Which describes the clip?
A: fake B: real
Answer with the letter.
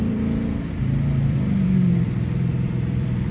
A